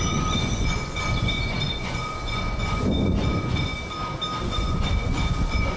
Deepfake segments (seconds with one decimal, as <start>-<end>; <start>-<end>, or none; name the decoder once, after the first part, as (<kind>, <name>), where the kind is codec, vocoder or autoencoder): 0.0-3.7 (vocoder, Vocos); 4.4-5.8